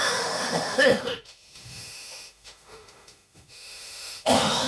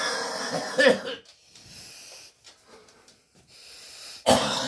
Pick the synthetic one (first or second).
first